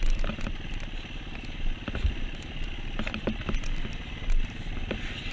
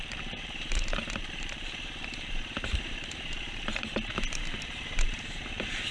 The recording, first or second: first